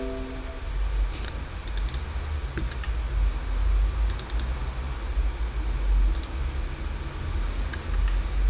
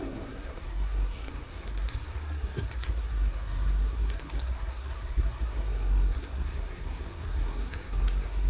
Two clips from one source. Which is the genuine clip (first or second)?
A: first